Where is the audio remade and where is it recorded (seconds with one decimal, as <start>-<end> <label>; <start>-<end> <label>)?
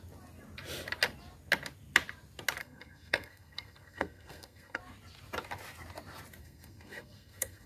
0.0-2.6 recorded; 2.6-4.8 remade; 4.8-6.4 recorded; 6.4-7.7 remade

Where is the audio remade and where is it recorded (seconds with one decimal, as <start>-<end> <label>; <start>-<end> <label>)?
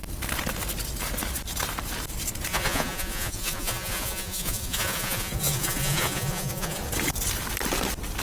0.0-2.5 recorded; 2.5-6.8 remade; 6.8-8.2 recorded